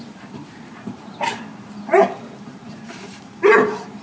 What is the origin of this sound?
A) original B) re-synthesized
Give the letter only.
B